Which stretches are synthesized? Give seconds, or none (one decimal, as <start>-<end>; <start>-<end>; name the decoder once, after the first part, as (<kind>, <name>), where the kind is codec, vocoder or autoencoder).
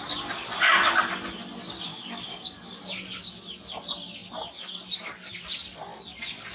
1.9-2.8 (codec, DAC)